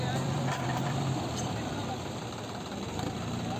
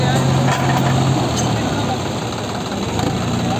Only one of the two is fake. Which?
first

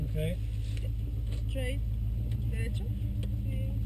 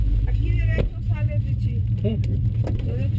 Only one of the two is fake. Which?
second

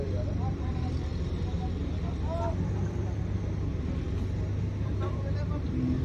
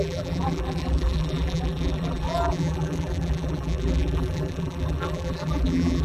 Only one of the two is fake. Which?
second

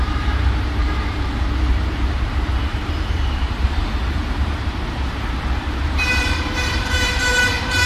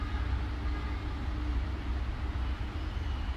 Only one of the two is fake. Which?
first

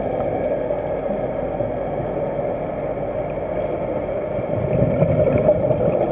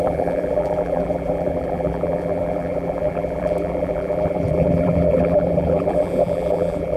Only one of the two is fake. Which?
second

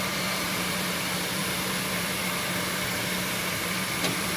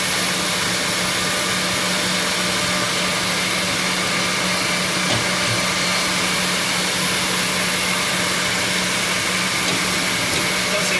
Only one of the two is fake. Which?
first